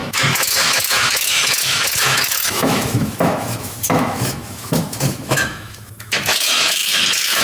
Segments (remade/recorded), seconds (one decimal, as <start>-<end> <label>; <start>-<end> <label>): 0.0-7.4 remade